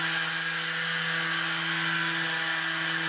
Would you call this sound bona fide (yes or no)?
yes